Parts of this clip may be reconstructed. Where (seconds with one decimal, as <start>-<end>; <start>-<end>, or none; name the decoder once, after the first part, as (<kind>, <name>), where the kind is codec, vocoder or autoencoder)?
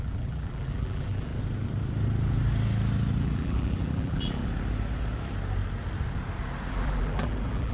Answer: 0.0-1.3 (vocoder, BigVGAN v2); 3.2-4.4; 6.7-7.7